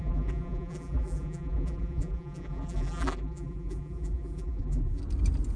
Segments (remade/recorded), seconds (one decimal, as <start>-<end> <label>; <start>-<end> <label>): 0.0-5.0 remade; 5.0-5.6 recorded